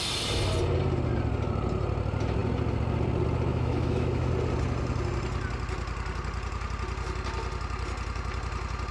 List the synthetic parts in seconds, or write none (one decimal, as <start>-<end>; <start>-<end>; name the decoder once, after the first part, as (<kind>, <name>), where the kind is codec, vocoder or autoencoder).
3.5-4.3 (autoencoder, DAC-VAE)